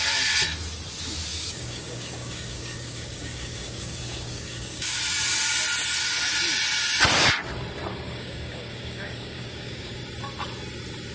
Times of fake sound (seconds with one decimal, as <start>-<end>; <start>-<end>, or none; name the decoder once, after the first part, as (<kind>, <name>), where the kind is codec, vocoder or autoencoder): 1.3-5.0 (codec, DAC); 7.9-10.0